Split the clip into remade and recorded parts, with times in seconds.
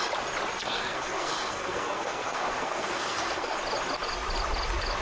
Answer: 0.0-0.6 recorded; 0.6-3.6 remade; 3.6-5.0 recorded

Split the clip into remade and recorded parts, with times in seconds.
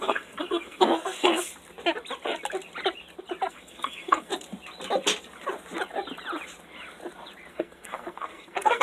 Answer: 0.0-1.5 remade; 1.5-3.5 recorded; 3.5-4.3 remade; 4.3-7.5 recorded; 7.5-8.8 remade